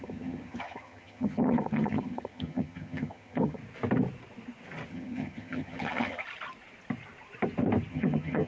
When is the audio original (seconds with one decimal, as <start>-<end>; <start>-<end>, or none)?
3.6-4.9; 6.2-7.9

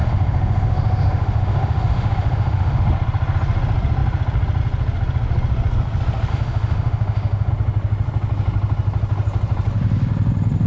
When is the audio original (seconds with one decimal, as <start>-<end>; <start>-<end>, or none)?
2.8-6.3; 7.5-10.7

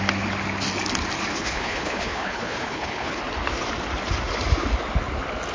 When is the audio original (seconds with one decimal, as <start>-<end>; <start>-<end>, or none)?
0.0-1.3; 3.2-5.5

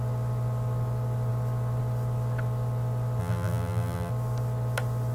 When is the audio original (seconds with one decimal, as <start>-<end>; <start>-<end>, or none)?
0.0-3.2; 4.1-5.1

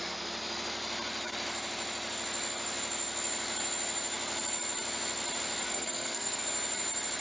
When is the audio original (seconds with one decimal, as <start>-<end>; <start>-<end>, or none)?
0.0-5.6; 6.4-7.2